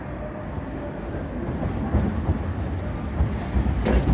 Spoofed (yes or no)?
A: no